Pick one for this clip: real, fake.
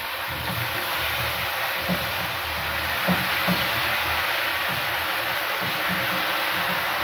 real